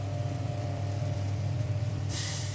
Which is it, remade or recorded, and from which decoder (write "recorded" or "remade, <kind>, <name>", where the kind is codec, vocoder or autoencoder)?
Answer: remade, vocoder, BigVGAN v2